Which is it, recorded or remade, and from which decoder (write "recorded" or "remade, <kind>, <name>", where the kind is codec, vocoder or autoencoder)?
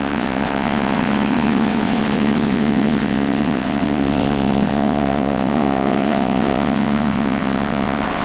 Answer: remade, vocoder, WaveNeXt